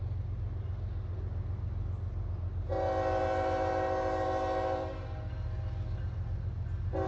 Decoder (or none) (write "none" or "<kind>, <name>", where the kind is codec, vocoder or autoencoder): none